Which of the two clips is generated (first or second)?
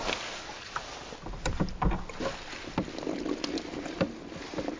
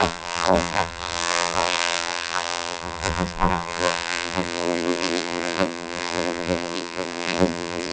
second